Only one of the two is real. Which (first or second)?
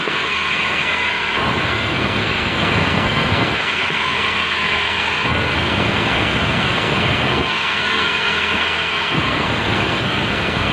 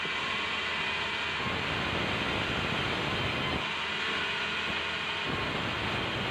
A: second